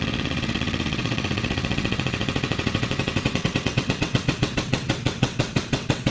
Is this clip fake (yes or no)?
yes